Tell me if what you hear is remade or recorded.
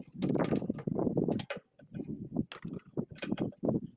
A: recorded